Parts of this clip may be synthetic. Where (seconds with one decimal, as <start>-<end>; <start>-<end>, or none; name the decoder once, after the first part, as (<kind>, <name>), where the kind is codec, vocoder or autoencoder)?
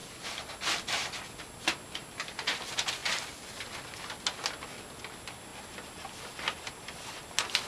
none